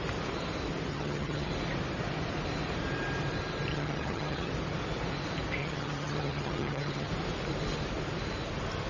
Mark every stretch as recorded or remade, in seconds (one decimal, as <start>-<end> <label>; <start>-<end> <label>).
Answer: 0.0-0.9 recorded; 0.9-1.5 remade; 1.5-3.7 recorded; 3.7-4.5 remade; 4.5-5.6 recorded; 5.6-7.1 remade; 7.1-8.9 recorded

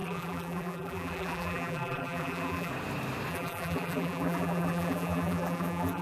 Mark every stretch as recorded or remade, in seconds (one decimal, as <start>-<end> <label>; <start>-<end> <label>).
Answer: 0.0-2.7 remade; 2.7-3.3 recorded; 3.3-6.0 remade

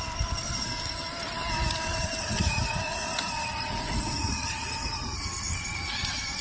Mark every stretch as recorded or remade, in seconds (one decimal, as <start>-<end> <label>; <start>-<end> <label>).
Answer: 0.0-2.2 recorded; 2.2-6.0 remade; 6.0-6.4 recorded

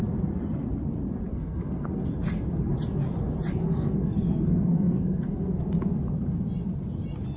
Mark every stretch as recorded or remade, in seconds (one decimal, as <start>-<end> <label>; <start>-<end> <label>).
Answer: 0.0-1.3 recorded; 1.3-2.1 remade; 2.1-3.6 recorded; 3.6-5.5 remade; 5.5-7.4 recorded

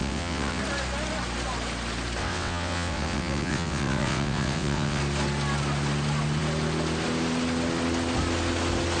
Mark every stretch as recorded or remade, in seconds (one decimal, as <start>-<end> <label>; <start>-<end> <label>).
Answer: 0.0-0.6 remade; 0.6-2.2 recorded; 2.2-5.0 remade; 5.0-9.0 recorded

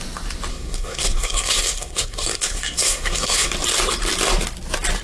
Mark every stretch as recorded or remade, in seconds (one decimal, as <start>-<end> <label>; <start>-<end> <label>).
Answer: 0.0-0.5 recorded; 0.5-3.5 remade; 3.5-5.0 recorded

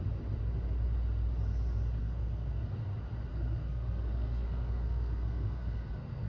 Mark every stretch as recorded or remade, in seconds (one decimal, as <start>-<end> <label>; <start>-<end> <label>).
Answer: 0.0-2.0 recorded; 2.0-2.6 remade; 2.6-3.3 recorded; 3.3-6.3 remade